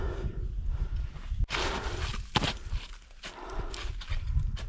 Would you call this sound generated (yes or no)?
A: no